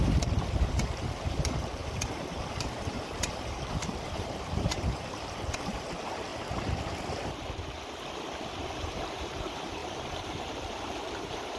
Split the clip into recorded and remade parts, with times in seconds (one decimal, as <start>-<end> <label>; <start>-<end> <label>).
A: 0.0-6.3 remade; 6.3-8.8 recorded; 8.8-11.6 remade